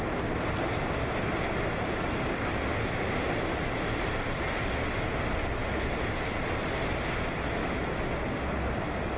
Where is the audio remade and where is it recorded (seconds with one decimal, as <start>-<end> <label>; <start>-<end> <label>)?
0.0-7.6 recorded; 7.6-8.1 remade; 8.1-9.2 recorded